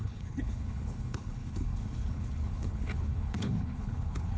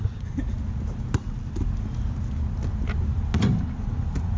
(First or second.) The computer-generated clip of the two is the first